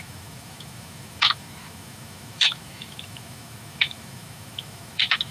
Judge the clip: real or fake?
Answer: fake